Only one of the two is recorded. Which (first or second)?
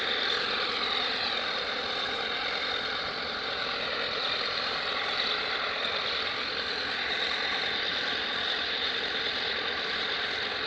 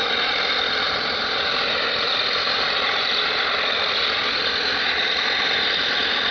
second